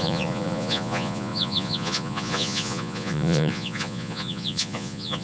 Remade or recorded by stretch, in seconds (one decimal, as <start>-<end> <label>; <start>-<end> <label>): 0.0-5.2 remade